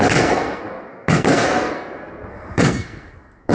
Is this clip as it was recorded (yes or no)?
no